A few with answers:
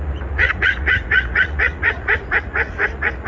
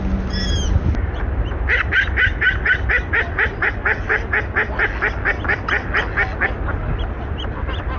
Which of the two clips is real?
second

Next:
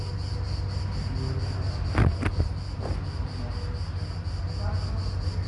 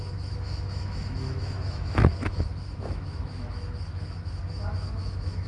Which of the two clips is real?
first